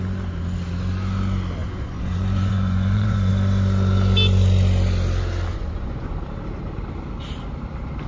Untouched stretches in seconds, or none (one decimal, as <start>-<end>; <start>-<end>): 0.0-1.6; 3.3-5.5; 6.1-8.1